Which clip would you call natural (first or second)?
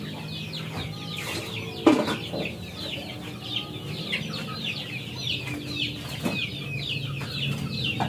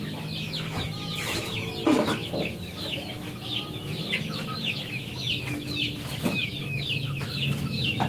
first